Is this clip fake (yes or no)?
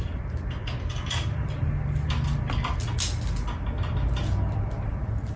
no